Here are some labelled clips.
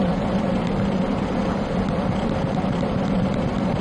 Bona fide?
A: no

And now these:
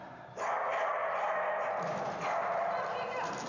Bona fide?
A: yes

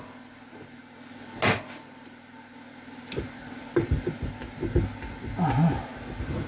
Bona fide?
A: yes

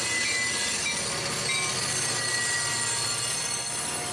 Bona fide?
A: yes